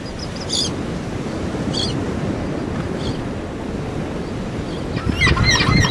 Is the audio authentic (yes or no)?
yes